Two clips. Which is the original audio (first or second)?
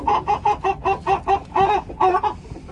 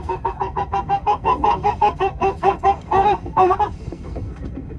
first